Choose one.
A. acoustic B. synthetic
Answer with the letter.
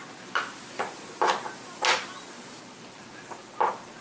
A